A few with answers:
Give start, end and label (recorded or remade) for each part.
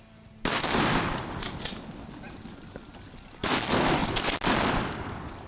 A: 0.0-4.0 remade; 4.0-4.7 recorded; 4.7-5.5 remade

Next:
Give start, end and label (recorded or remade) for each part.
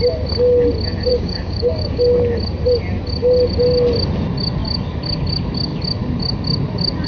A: 0.0-1.1 recorded; 1.1-2.0 remade; 2.0-7.1 recorded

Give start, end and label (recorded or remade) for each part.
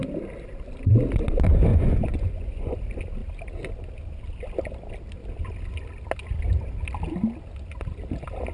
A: 0.0-1.7 recorded; 1.7-2.7 remade; 2.7-8.5 recorded